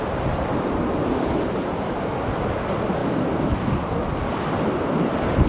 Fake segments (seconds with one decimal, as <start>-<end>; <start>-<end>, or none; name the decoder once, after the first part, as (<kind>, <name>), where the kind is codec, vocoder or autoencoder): none